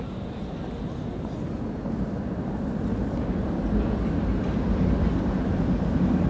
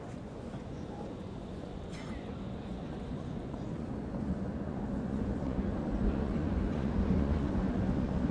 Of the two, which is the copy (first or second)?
second